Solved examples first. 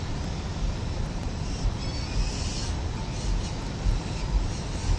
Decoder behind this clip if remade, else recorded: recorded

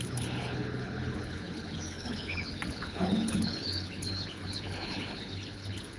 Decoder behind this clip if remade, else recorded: remade, codec, HILCodec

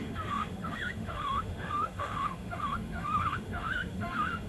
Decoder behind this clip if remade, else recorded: remade, autoencoder, DAC-VAE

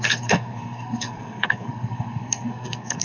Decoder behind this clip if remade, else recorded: remade, codec, SNAC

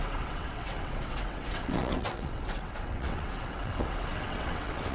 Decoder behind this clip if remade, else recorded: remade, vocoder, WaveNeXt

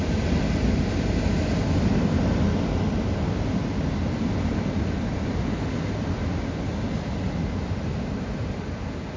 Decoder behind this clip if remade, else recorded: recorded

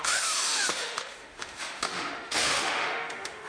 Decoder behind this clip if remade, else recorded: remade, autoencoder, DAC-VAE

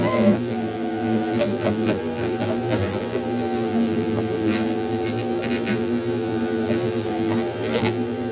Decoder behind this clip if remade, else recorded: remade, vocoder, BigVGAN v2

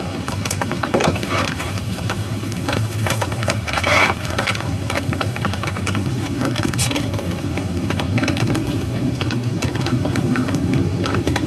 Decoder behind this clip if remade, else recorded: remade, codec, SNAC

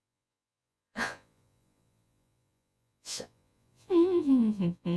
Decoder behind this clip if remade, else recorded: remade, vocoder, Vocos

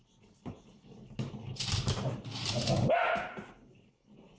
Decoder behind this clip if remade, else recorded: recorded